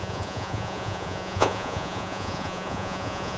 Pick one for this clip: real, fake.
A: fake